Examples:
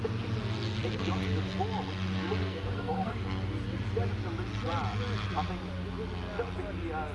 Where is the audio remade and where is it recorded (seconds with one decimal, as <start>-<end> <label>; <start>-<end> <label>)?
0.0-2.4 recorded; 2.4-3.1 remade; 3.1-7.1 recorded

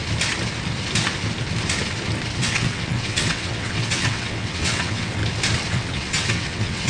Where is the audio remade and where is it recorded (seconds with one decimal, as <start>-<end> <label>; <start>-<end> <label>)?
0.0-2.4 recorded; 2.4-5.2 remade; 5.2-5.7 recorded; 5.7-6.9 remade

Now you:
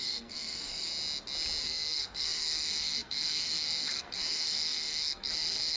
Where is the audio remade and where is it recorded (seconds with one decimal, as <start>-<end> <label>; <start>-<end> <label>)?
0.0-0.9 remade; 0.9-1.6 recorded; 1.6-5.8 remade